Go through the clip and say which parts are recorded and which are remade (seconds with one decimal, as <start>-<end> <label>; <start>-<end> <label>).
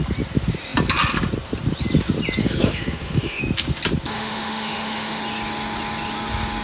0.0-2.4 recorded; 2.4-3.4 remade; 3.4-4.1 recorded; 4.1-5.2 remade; 5.2-6.6 recorded